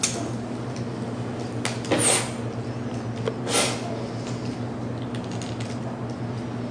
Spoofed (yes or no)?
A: no